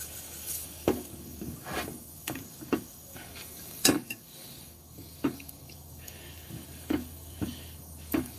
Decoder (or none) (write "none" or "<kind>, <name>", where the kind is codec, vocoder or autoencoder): codec, DAC